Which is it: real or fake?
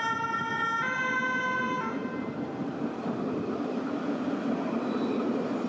real